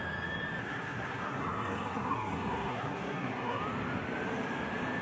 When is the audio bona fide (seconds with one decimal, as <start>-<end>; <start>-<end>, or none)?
0.0-0.6; 3.6-5.0